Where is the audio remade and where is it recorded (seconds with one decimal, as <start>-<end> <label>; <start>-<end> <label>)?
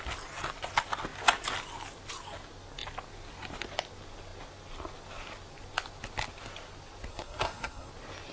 0.0-7.1 recorded; 7.1-7.9 remade; 7.9-8.3 recorded